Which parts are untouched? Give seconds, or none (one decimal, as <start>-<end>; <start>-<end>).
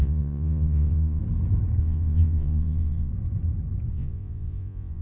1.2-1.8; 3.1-3.9